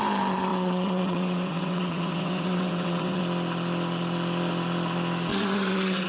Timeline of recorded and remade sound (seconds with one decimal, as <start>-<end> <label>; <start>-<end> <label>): 0.0-0.5 recorded; 0.5-3.2 remade; 3.2-5.3 recorded; 5.3-6.1 remade